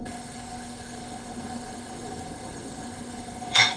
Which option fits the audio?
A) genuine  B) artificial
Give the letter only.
B